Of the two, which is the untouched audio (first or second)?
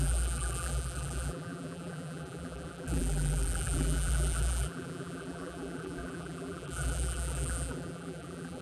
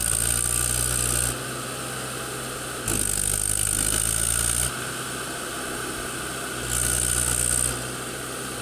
second